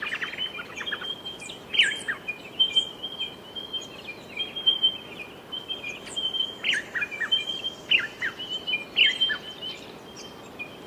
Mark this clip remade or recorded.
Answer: recorded